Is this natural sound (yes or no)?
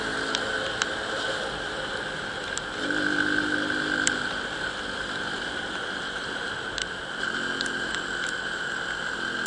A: yes